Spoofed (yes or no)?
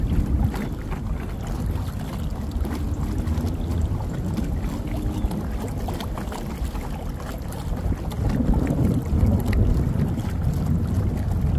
no